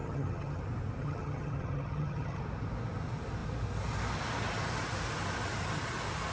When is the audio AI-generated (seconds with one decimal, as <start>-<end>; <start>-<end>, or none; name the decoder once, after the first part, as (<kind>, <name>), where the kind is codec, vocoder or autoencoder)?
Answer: 0.0-0.6 (vocoder, HiFi-GAN); 1.0-2.4